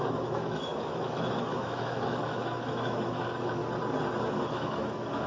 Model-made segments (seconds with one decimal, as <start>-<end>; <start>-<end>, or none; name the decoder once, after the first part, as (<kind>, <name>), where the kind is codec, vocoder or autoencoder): 0.0-3.6 (autoencoder, DAC-VAE); 4.3-5.3